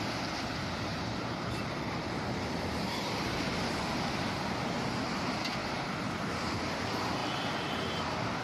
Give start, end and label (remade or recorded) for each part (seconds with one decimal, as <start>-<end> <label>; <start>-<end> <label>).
0.0-0.9 recorded; 0.9-4.1 remade; 4.1-5.6 recorded; 5.6-6.8 remade; 6.8-8.4 recorded